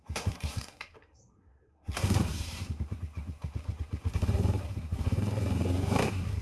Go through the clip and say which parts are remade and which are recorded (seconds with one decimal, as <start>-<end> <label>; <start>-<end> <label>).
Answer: 0.0-6.4 remade